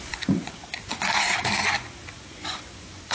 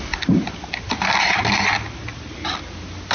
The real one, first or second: second